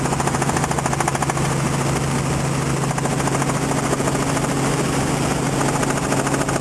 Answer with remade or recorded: recorded